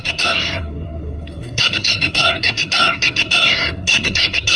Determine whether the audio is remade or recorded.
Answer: remade